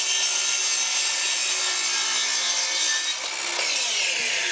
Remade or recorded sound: recorded